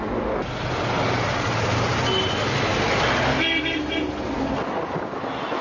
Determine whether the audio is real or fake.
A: real